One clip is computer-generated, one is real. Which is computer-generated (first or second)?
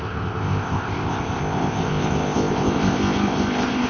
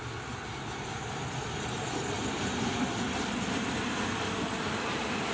first